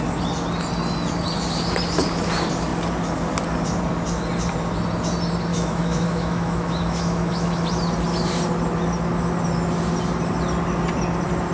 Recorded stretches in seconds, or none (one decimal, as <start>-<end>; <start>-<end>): 0.0-5.5; 7.6-11.5